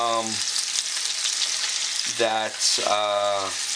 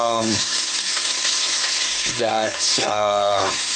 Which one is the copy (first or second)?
second